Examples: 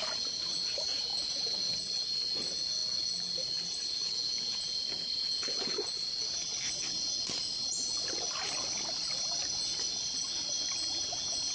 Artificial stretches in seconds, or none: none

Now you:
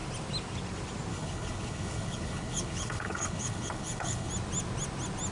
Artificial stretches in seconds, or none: 1.1-4.3 (codec, HILCodec)

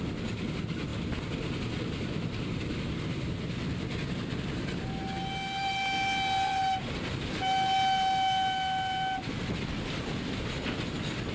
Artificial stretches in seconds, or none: none